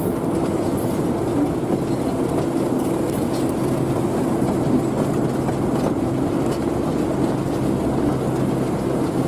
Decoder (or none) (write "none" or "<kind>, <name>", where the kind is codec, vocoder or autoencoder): none